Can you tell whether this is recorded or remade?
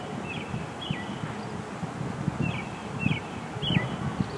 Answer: recorded